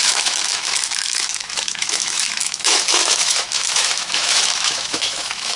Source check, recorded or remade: remade